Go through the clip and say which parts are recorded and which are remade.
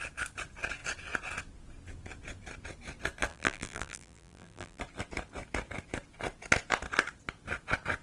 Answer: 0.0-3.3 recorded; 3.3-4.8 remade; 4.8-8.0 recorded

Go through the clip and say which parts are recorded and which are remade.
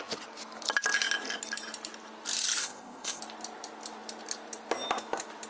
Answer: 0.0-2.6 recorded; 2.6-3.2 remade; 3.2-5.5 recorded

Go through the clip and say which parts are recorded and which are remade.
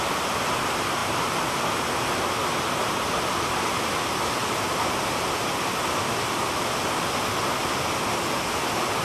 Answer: 0.0-1.0 recorded; 1.0-1.6 remade; 1.6-9.0 recorded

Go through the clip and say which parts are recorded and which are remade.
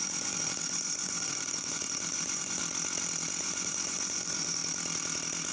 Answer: 0.0-2.6 remade; 2.6-3.4 recorded; 3.4-4.6 remade; 4.6-5.5 recorded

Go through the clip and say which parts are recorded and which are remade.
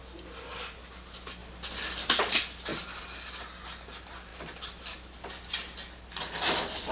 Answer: 0.0-6.9 recorded